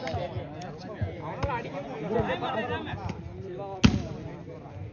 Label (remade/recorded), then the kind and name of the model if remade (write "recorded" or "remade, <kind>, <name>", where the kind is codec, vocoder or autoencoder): recorded